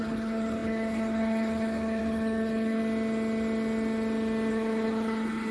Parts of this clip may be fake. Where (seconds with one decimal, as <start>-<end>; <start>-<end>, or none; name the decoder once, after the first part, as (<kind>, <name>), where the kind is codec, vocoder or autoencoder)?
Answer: 0.0-2.8 (codec, HILCodec); 4.5-5.5